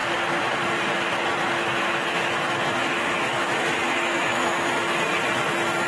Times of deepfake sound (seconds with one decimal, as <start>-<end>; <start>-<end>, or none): 1.6-5.1